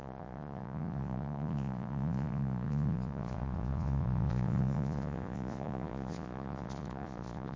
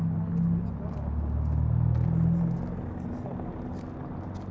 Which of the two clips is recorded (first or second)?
second